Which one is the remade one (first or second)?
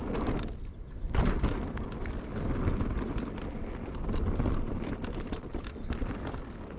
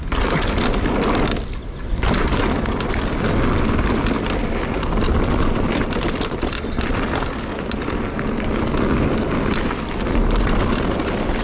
first